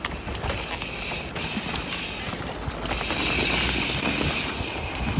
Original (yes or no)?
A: yes